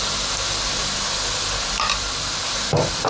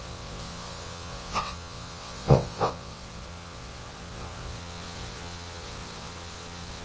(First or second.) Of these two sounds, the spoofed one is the second